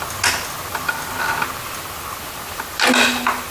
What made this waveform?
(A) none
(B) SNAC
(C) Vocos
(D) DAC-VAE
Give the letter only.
A